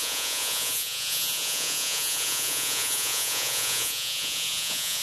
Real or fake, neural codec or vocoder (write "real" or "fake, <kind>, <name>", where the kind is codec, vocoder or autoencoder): fake, vocoder, Vocos